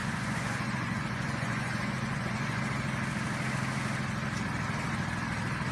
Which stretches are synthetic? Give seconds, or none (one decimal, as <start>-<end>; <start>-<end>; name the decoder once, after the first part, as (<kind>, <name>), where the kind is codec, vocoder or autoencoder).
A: 0.0-2.6 (vocoder, Vocos)